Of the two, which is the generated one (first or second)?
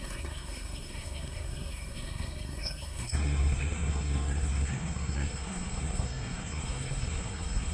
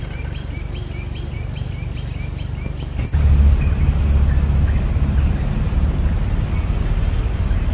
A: first